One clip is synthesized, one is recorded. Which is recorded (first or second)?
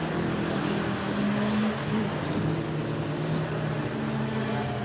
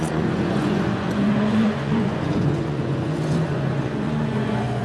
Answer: first